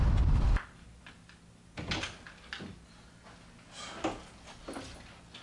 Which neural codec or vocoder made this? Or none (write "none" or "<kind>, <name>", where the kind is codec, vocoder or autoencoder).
none